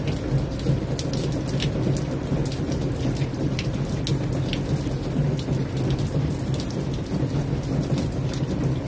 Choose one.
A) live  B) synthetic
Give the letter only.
A